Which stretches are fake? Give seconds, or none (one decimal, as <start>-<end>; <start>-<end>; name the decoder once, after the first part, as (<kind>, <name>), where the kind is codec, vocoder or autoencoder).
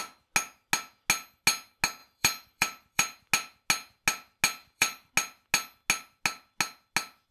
2.0-3.3 (vocoder, BigVGAN v2); 4.6-5.1